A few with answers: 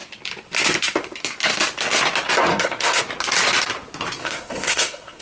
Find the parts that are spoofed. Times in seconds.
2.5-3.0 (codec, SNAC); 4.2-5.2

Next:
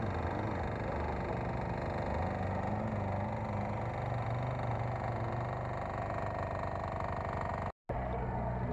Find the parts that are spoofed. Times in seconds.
none

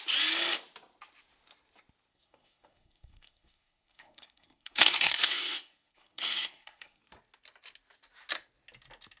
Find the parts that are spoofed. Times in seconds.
2.1-7.0 (codec, SNAC)

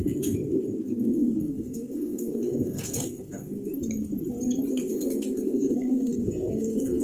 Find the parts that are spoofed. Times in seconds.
0.0-3.7 (codec, SNAC); 4.7-7.0

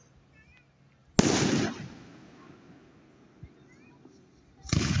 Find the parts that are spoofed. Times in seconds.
none